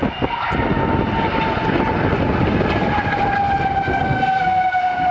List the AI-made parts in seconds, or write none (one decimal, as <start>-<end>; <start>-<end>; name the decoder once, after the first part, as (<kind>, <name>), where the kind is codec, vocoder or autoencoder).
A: 3.9-5.1 (codec, SNAC)